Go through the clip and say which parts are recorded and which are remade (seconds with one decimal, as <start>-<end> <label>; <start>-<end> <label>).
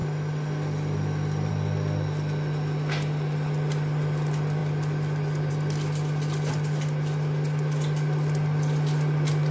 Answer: 0.0-9.5 recorded